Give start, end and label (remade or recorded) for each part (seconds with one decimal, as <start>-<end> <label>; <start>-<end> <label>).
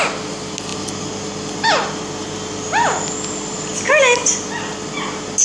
0.0-5.4 recorded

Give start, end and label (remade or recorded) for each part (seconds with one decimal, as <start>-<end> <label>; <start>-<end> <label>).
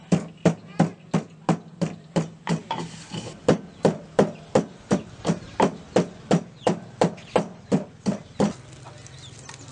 0.0-2.4 recorded; 2.4-3.4 remade; 3.4-9.7 recorded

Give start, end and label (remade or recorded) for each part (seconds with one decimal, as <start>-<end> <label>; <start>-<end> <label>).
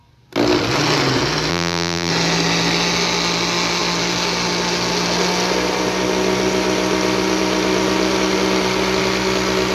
0.0-1.5 recorded; 1.5-2.1 remade; 2.1-9.7 recorded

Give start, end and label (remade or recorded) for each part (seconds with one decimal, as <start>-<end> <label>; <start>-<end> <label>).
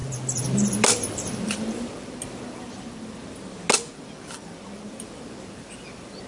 0.0-3.2 remade; 3.2-3.9 recorded; 3.9-6.3 remade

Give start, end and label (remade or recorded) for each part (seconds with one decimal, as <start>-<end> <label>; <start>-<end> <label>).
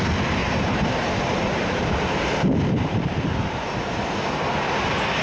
0.0-0.4 recorded; 0.4-3.5 remade; 3.5-5.2 recorded